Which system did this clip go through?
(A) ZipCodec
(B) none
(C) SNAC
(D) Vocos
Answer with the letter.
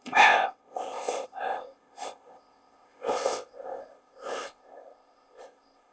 A